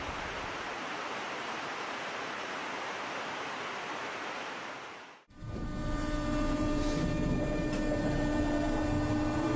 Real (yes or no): no